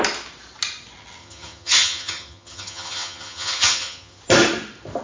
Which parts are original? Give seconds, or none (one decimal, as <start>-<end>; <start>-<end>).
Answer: 0.0-1.2; 4.2-5.0